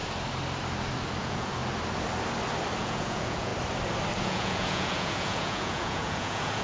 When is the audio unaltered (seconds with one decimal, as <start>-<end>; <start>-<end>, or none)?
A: 0.0-1.2; 1.6-2.8; 3.5-4.2

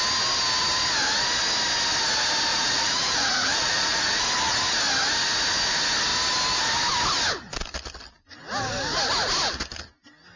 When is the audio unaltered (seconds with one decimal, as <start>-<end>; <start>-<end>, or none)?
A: 0.0-2.5; 4.2-10.4

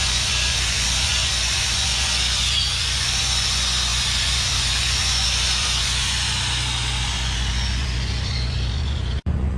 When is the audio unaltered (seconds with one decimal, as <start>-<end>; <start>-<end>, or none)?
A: none

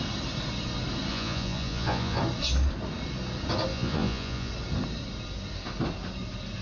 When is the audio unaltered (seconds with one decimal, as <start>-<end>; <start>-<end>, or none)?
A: 0.0-1.1; 2.2-3.7; 4.5-6.6

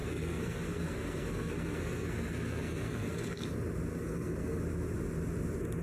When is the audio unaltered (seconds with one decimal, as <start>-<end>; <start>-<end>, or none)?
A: 3.5-3.9; 4.6-5.8